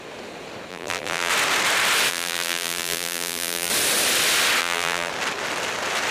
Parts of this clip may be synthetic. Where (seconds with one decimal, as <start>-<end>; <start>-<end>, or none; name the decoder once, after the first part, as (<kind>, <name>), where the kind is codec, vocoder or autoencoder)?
0.7-1.3 (vocoder, BigVGAN v2); 2.1-3.7; 4.6-5.1